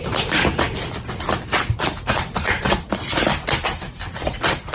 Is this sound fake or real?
fake